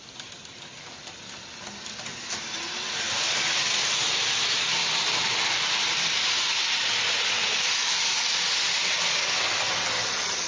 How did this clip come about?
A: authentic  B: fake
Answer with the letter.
A